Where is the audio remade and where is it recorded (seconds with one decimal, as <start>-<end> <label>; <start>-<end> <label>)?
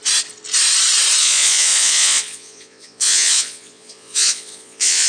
0.0-1.2 recorded; 1.2-5.1 remade